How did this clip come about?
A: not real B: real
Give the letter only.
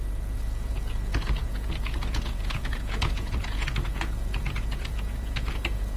A